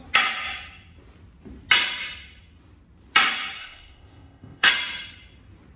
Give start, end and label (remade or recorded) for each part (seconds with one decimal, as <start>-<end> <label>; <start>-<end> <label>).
0.0-3.6 recorded; 3.6-4.7 remade; 4.7-5.8 recorded